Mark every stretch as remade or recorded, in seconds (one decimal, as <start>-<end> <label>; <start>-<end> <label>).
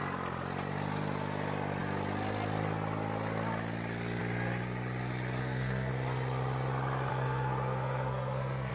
0.0-5.4 recorded; 5.4-5.9 remade; 5.9-7.1 recorded; 7.1-8.7 remade